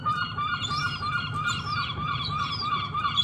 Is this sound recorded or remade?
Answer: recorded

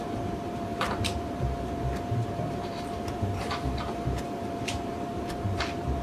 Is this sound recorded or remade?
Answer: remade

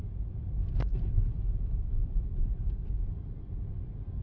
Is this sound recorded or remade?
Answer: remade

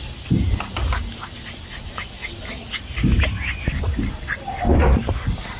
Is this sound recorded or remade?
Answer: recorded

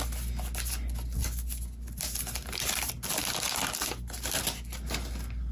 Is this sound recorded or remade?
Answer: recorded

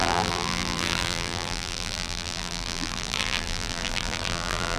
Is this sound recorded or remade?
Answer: remade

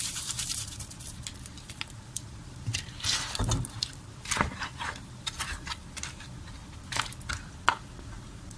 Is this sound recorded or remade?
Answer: remade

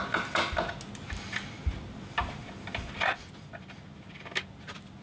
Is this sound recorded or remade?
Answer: recorded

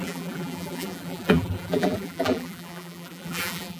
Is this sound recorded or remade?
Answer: remade